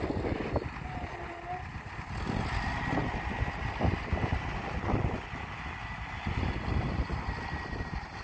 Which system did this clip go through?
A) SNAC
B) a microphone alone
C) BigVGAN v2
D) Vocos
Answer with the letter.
B